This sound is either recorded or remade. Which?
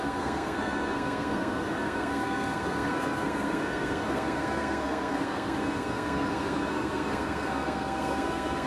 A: remade